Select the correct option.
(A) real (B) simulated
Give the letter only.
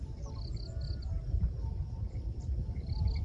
A